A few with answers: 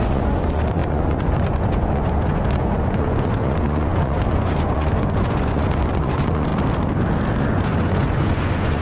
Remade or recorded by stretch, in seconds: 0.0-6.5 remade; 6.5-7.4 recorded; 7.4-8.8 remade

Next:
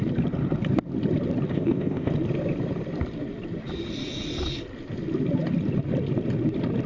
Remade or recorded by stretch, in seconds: 0.0-1.5 recorded; 1.5-2.1 remade; 2.1-6.9 recorded

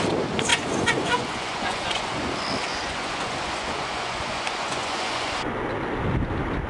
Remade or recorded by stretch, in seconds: 0.0-0.5 recorded; 0.5-2.3 remade; 2.3-2.7 recorded; 2.7-5.5 remade; 5.5-6.7 recorded

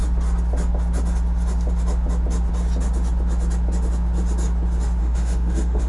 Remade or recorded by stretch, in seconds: 0.0-5.0 recorded; 5.0-5.9 remade

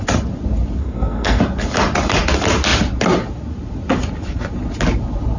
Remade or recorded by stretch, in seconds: 0.0-0.8 recorded; 0.8-1.4 remade; 1.4-5.4 recorded

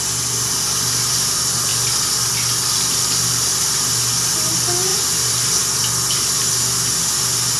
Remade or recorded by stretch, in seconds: 0.0-4.9 recorded; 4.9-5.6 remade; 5.6-7.6 recorded

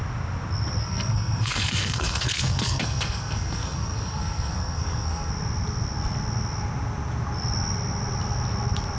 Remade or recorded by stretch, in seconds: 0.0-0.8 recorded; 0.8-5.3 remade; 5.3-9.0 recorded

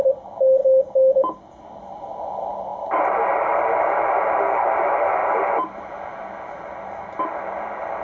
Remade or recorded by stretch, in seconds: 0.0-8.0 recorded